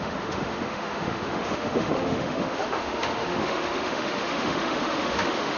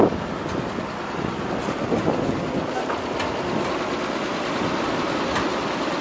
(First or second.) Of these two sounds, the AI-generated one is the first